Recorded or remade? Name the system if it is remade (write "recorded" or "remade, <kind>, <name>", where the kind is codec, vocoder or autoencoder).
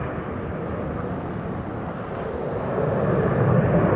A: recorded